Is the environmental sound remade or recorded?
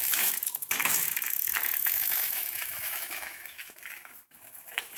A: remade